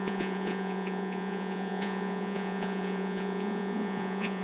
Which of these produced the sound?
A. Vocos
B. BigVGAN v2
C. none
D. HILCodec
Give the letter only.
A